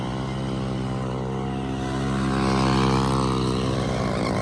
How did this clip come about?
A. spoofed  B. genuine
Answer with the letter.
B